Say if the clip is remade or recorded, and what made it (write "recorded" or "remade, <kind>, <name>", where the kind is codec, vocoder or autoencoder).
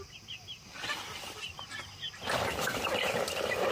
recorded